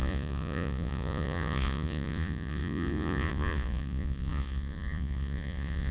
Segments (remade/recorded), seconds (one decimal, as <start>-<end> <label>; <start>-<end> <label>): 0.0-5.9 remade